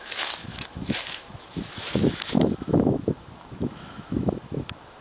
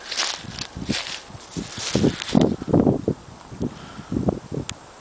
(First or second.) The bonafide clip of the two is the second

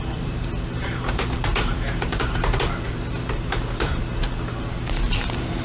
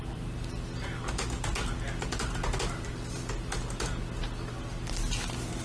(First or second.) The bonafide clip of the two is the second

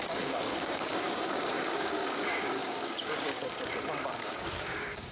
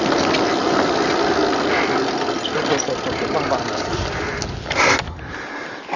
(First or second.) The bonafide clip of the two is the second